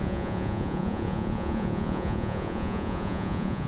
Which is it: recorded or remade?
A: remade